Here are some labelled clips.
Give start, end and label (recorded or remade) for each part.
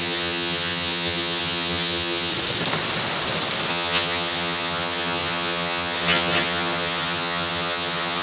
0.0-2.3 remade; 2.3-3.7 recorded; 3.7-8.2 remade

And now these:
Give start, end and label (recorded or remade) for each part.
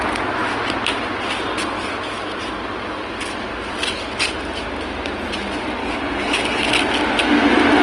0.0-5.8 recorded; 5.8-6.7 remade; 6.7-7.8 recorded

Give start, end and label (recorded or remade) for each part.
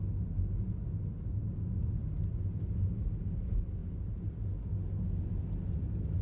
0.0-0.8 recorded; 0.8-1.5 remade; 1.5-3.8 recorded; 3.8-4.7 remade; 4.7-6.2 recorded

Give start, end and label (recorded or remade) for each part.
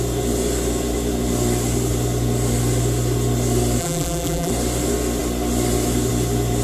0.0-3.8 recorded; 3.8-4.5 remade; 4.5-6.6 recorded